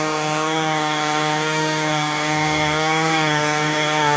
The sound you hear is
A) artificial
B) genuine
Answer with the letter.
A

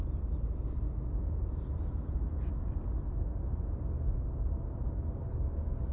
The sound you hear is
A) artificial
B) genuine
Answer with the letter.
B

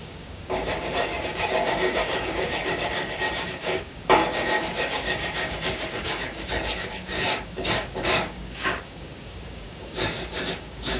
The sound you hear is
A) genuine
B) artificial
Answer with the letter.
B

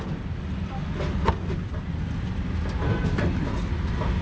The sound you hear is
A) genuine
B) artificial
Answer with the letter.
A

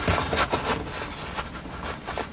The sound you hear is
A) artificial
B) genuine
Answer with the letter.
B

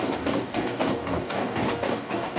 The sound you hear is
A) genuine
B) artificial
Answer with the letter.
B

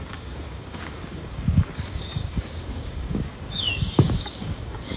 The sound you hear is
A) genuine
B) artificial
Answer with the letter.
B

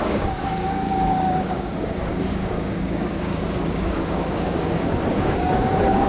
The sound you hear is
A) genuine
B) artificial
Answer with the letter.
B